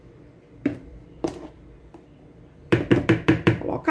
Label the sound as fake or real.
fake